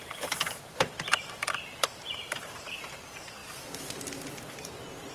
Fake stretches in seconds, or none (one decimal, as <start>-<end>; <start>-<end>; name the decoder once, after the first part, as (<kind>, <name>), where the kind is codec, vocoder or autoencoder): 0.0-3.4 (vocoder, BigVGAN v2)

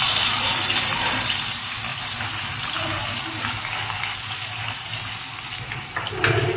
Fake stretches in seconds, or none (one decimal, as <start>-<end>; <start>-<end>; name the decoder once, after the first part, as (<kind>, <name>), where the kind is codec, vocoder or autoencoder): none

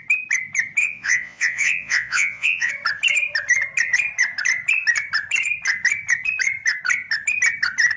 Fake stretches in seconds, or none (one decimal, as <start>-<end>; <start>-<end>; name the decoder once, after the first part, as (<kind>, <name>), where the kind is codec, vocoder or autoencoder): 0.8-2.7 (vocoder, Vocos)

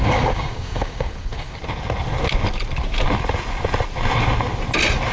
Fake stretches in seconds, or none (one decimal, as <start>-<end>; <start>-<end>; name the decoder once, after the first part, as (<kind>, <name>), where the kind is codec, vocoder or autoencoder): 0.0-1.6 (codec, DAC)

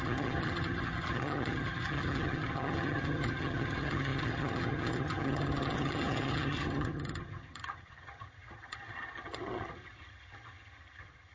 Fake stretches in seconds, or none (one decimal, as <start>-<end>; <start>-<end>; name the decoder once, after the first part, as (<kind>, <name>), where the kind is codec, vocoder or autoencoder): 0.0-11.3 (vocoder, HiFi-GAN)

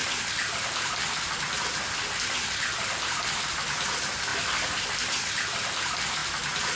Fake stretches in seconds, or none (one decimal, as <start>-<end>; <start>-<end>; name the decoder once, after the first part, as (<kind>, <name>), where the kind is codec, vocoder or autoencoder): none

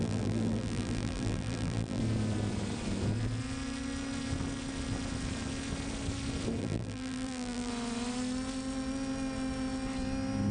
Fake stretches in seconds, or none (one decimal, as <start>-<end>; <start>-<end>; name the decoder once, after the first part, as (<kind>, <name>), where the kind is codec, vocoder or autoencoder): 0.0-2.0 (vocoder, BigVGAN v2); 6.6-7.7

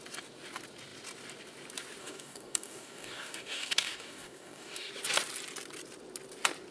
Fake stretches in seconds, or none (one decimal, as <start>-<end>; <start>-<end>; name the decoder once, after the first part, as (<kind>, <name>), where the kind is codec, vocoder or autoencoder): 2.0-4.9 (codec, DAC)